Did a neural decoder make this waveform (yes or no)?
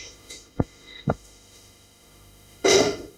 yes